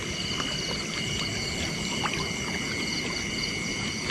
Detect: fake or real real